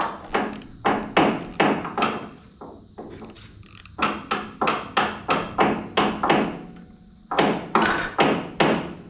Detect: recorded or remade recorded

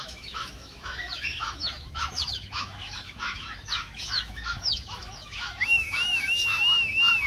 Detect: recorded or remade remade